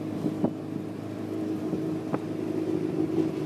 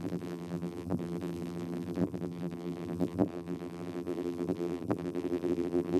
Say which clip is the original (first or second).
first